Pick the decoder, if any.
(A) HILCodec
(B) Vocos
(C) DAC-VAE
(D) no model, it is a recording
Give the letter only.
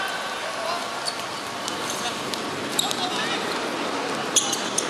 D